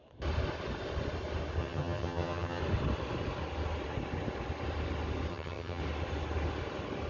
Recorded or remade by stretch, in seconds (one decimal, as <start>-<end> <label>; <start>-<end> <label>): 0.0-1.6 recorded; 1.6-2.6 remade; 2.6-5.3 recorded; 5.3-5.8 remade; 5.8-7.1 recorded